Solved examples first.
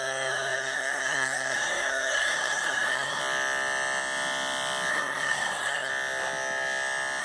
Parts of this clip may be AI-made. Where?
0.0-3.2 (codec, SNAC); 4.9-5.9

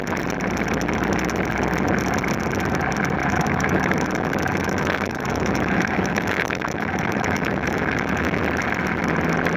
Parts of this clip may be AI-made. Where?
3.2-8.4 (autoencoder, DAC-VAE)

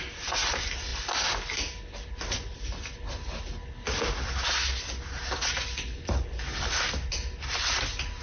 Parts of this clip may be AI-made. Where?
none

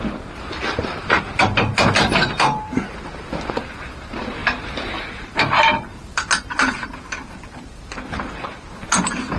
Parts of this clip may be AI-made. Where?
0.8-3.3 (vocoder, BigVGAN v2); 4.4-8.9

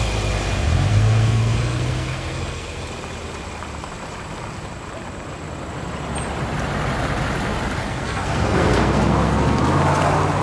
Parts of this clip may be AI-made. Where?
0.9-2.9 (codec, SNAC); 7.8-9.6